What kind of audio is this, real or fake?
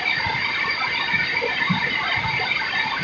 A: real